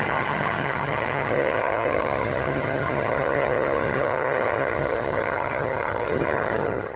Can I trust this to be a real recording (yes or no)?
no